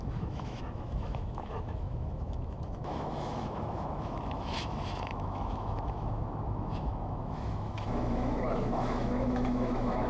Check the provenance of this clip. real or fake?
fake